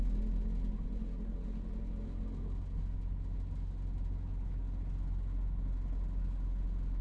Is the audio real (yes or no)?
yes